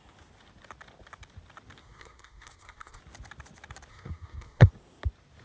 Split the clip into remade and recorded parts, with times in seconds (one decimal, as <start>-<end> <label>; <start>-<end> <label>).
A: 0.0-1.8 recorded; 1.8-3.0 remade; 3.0-3.9 recorded; 3.9-4.7 remade; 4.7-5.4 recorded